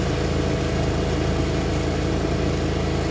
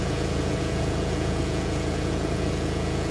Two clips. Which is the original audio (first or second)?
first